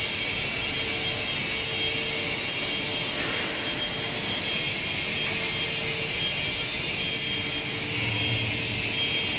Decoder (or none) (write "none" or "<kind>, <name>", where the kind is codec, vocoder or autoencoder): none